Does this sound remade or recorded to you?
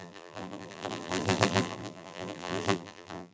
remade